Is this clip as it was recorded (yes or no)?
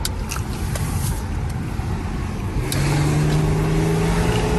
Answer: yes